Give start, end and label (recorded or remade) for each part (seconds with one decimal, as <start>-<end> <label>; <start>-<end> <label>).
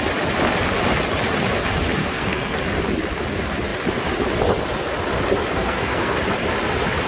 0.0-2.0 recorded; 2.0-2.6 remade; 2.6-5.5 recorded; 5.5-6.2 remade; 6.2-7.1 recorded